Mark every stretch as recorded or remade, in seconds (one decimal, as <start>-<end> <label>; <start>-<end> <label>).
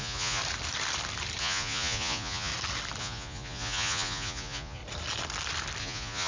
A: 0.0-0.4 remade; 0.4-1.4 recorded; 1.4-2.5 remade; 2.5-3.0 recorded; 3.0-4.8 remade; 4.8-5.8 recorded; 5.8-6.3 remade